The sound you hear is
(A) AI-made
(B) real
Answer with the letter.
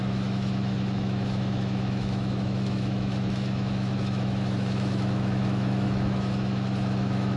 A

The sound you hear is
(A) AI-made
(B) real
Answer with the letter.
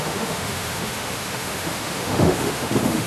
A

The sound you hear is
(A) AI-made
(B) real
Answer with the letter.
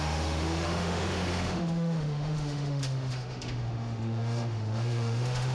A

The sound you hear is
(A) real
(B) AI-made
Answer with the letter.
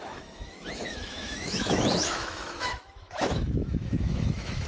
B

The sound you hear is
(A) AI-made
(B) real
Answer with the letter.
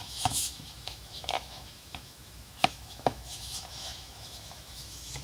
A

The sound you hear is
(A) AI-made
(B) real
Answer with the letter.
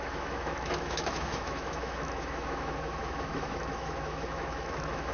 A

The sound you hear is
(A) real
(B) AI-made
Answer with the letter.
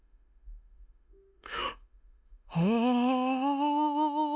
B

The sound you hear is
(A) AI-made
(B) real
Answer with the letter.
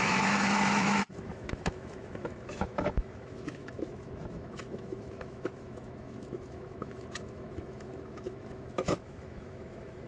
A